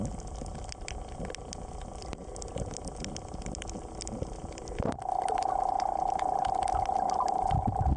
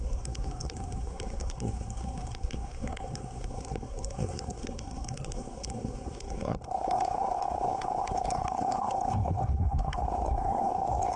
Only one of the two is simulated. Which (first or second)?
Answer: second